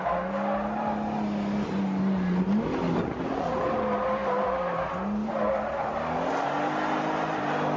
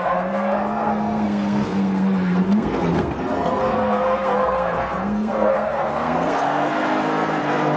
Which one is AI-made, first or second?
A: second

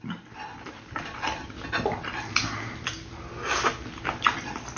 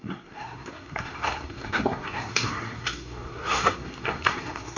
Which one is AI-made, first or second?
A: second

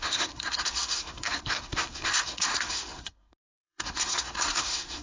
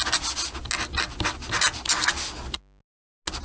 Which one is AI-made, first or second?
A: first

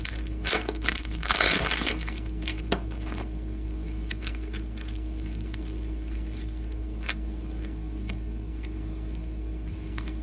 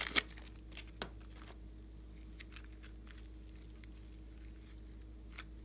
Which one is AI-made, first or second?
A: first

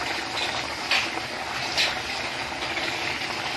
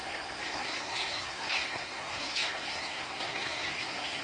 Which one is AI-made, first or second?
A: second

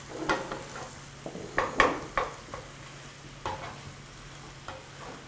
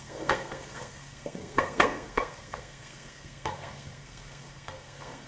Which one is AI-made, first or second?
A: second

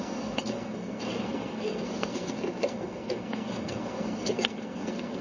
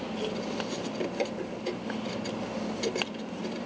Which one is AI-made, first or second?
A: first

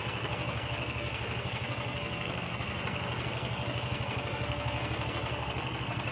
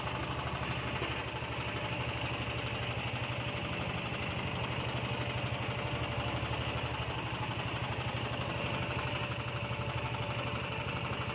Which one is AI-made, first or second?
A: first